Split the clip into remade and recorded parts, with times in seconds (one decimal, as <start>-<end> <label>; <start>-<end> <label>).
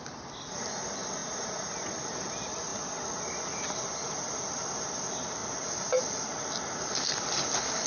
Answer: 0.0-7.9 recorded